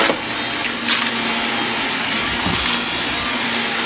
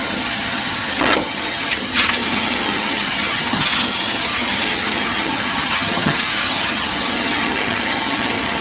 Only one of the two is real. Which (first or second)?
first